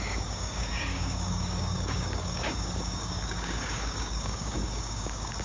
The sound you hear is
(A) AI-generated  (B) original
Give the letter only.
A